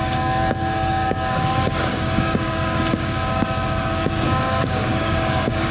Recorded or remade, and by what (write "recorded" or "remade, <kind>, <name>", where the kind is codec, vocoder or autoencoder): remade, codec, DAC